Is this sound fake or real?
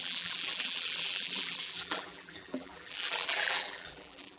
fake